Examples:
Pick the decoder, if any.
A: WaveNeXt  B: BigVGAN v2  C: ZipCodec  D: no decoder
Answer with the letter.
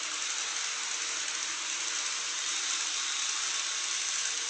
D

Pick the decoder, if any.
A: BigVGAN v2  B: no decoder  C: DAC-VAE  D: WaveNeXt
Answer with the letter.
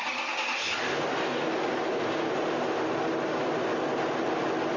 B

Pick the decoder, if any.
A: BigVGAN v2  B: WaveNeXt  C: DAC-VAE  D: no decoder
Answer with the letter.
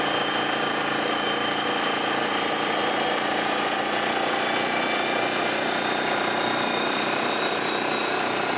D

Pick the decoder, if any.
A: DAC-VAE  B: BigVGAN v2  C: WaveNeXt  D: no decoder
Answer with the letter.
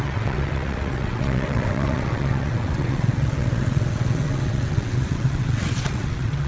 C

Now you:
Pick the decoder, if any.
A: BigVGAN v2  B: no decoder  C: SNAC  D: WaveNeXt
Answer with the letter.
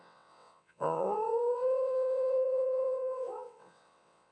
D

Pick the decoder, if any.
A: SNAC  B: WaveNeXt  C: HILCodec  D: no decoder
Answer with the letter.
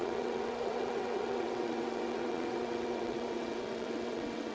B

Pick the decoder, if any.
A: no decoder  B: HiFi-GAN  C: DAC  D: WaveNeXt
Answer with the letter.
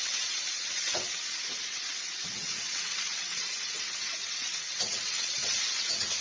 D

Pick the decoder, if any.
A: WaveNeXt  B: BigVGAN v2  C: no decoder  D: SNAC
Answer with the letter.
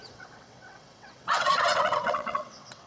A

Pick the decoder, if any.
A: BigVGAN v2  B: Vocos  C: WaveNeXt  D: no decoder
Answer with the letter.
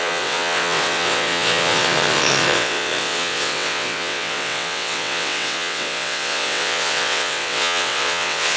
C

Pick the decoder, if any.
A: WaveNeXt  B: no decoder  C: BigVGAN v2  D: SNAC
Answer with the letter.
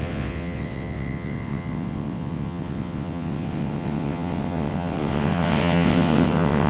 A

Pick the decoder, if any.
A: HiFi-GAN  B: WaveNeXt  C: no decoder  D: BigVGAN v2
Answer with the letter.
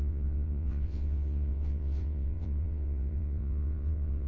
B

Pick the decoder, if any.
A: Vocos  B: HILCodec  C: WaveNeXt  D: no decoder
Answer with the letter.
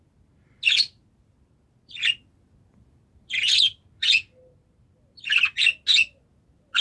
D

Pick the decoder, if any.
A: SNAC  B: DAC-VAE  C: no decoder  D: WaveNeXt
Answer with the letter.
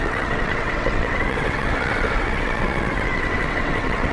D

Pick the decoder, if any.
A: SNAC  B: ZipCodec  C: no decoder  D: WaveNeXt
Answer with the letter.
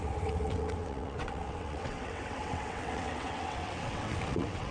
D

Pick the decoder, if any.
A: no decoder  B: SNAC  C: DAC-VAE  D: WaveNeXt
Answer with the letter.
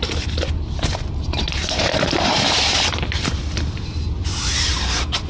A